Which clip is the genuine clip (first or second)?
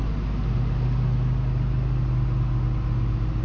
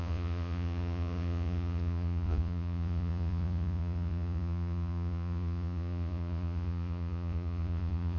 first